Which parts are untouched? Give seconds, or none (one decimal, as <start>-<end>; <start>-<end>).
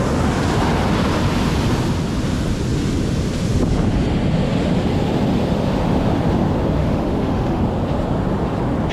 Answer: 0.0-6.8; 7.6-8.9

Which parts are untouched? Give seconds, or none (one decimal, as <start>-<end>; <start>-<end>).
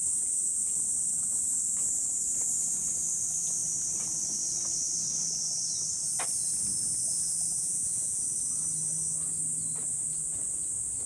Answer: 0.0-7.6; 8.2-11.1